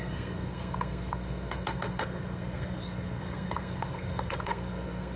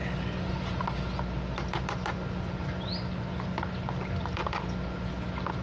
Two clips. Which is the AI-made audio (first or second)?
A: first